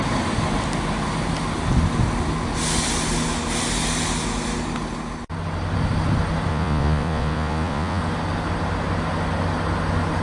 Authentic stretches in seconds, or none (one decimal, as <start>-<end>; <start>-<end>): 0.0-6.5; 8.0-10.2